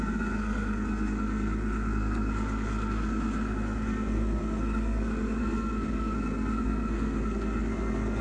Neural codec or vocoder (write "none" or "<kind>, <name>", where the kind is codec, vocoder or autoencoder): codec, SNAC